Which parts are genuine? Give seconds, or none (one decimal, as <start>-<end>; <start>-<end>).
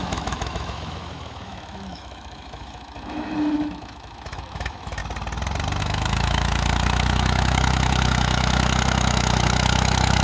5.0-5.8